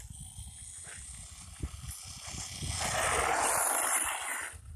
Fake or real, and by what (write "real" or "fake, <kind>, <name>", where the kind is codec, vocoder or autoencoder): real